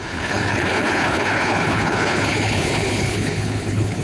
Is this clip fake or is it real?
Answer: fake